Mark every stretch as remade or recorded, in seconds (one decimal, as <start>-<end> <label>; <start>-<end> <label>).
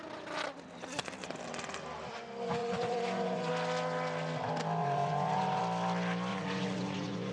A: 0.0-2.6 recorded; 2.6-3.5 remade; 3.5-4.8 recorded; 4.8-5.6 remade; 5.6-6.3 recorded; 6.3-7.3 remade